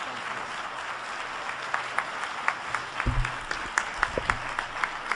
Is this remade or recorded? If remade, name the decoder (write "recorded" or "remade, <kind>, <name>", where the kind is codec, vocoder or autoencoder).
recorded